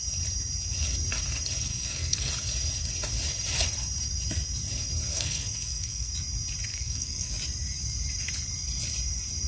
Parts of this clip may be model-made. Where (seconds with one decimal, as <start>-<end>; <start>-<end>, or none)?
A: 1.7-2.3; 5.1-6.1; 6.7-7.3